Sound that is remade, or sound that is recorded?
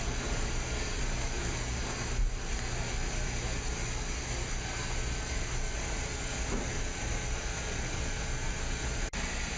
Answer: recorded